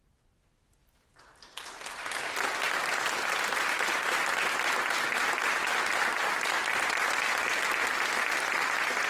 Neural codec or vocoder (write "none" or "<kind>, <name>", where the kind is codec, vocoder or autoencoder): none